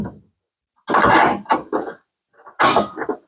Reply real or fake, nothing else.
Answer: real